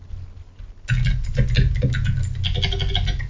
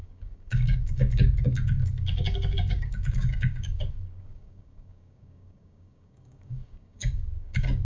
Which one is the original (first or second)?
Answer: first